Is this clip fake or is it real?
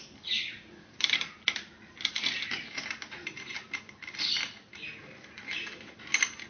real